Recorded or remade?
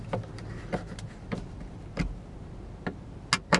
recorded